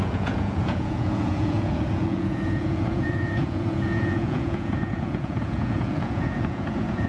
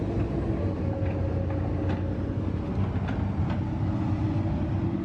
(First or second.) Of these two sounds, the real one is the second